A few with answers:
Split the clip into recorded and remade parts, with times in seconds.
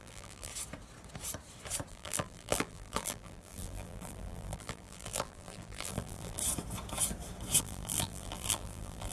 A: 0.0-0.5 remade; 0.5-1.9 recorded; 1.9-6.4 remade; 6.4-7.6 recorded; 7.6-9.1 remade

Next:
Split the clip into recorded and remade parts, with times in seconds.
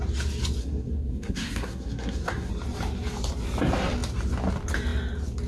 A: 0.0-0.6 recorded; 0.6-2.5 remade; 2.5-5.5 recorded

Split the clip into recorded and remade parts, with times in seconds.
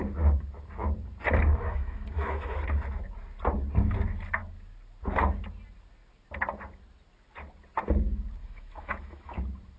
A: 0.0-1.5 recorded; 1.5-2.6 remade; 2.6-8.4 recorded; 8.4-9.4 remade; 9.4-9.8 recorded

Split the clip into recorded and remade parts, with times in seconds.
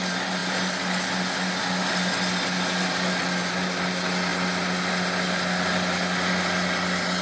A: 0.0-7.2 recorded